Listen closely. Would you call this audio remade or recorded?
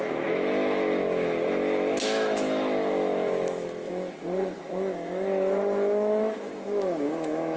remade